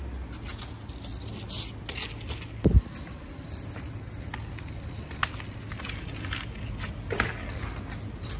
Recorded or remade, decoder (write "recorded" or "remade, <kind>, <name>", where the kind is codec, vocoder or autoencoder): recorded